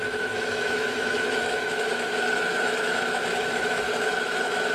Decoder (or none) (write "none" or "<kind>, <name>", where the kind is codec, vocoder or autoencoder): autoencoder, DAC-VAE